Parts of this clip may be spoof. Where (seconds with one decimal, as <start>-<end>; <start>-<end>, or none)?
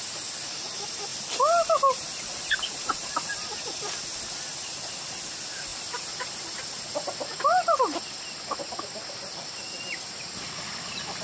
1.1-2.5; 5.7-7.8